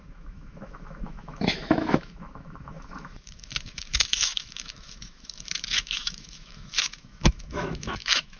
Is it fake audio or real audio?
fake